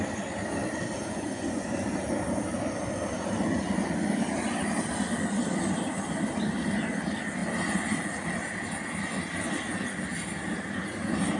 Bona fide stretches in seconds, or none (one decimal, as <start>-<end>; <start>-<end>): 0.0-1.0; 1.8-11.4